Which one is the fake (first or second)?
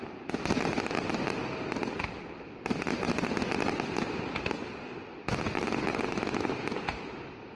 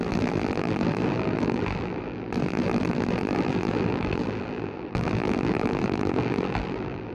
second